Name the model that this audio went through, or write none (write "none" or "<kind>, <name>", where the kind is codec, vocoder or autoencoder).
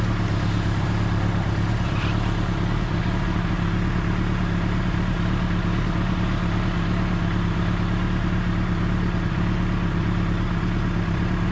none